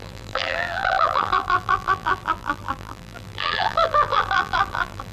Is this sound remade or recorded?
remade